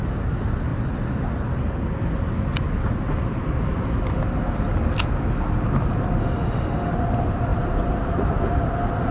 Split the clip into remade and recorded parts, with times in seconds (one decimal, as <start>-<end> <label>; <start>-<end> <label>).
0.0-6.2 recorded; 6.2-6.9 remade; 6.9-9.1 recorded